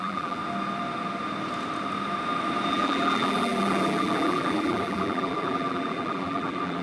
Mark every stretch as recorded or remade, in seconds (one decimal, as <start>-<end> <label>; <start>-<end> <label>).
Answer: 0.0-0.4 remade; 0.4-2.7 recorded; 2.7-6.8 remade